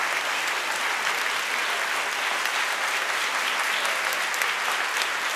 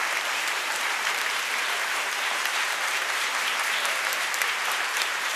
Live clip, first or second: first